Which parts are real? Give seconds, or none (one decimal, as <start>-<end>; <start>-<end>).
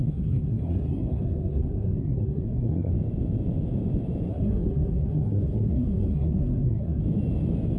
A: 2.9-4.3; 7.0-7.8